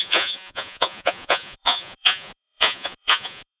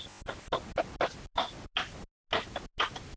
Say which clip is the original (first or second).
second